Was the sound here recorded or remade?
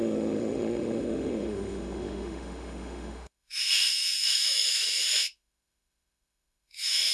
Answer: remade